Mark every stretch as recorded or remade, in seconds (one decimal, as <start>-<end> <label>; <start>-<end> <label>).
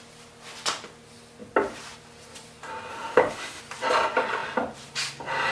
0.0-2.9 recorded; 2.9-3.6 remade; 3.6-5.5 recorded